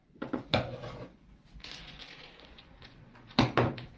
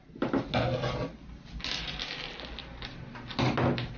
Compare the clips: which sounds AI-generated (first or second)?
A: first